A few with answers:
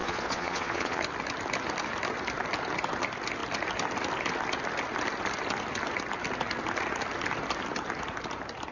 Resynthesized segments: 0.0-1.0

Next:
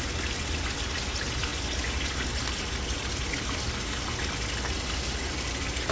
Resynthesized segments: none

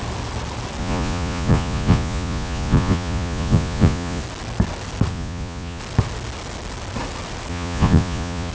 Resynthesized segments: 0.8-4.2; 5.1-5.8; 7.5-8.5

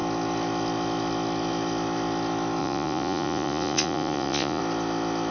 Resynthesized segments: 2.6-4.6

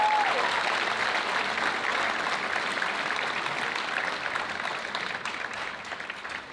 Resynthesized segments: none

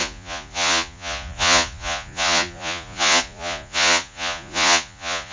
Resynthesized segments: 0.0-5.3

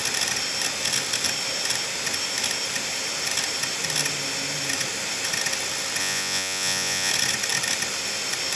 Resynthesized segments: 6.0-7.1

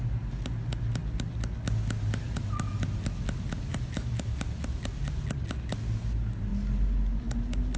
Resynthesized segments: none